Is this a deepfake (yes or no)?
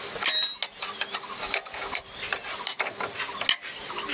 no